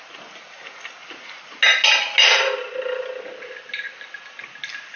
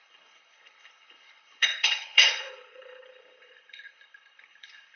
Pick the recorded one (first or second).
first